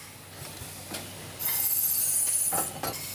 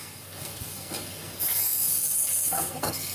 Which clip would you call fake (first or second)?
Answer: second